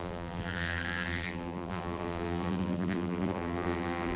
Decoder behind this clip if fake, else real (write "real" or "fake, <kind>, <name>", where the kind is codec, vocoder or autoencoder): fake, vocoder, BigVGAN v2